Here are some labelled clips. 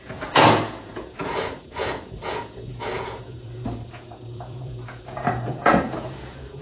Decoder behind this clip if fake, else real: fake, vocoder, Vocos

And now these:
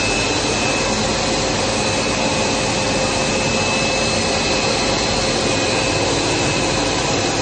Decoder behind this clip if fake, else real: real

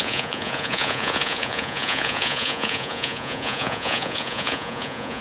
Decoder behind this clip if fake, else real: fake, vocoder, Vocos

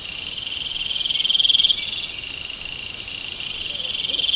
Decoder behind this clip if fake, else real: real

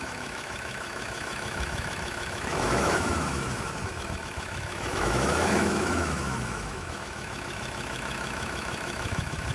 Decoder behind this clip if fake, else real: fake, autoencoder, DAC-VAE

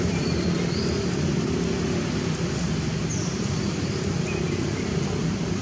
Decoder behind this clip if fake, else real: real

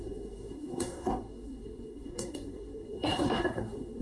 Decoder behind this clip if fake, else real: fake, codec, SNAC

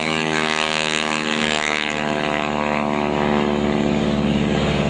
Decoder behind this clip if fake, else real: fake, codec, DAC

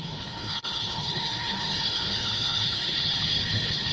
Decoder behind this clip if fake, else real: fake, codec, HILCodec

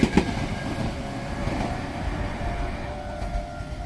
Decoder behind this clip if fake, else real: real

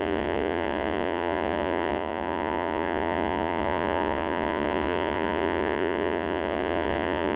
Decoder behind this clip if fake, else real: fake, vocoder, Vocos